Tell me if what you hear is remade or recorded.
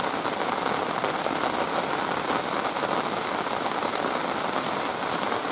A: remade